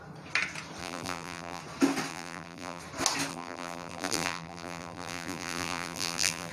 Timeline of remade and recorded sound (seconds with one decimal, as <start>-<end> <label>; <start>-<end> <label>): 0.0-0.8 recorded; 0.8-1.6 remade; 1.6-2.1 recorded; 2.1-2.8 remade; 2.8-3.3 recorded; 3.3-6.5 remade